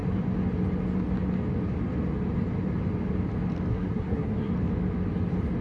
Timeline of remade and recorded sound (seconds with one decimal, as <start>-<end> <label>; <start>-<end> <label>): 0.0-3.7 recorded; 3.7-4.5 remade; 4.5-5.6 recorded